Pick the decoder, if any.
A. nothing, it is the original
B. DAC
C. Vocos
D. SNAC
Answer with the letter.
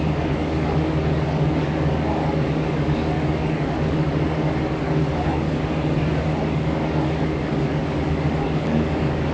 B